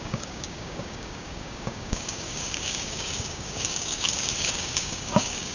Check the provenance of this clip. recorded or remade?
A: remade